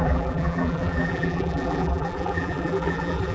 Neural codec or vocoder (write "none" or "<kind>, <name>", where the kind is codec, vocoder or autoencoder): vocoder, BigVGAN v2